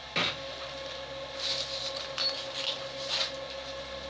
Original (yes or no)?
yes